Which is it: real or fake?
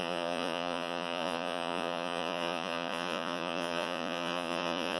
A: fake